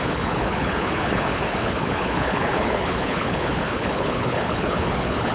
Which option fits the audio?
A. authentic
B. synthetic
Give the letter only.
B